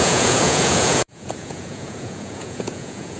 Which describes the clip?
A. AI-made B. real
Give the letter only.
A